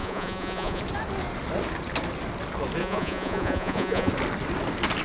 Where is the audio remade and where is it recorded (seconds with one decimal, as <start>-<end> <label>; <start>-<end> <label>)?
0.0-0.8 remade; 0.8-2.8 recorded; 2.8-4.1 remade; 4.1-5.0 recorded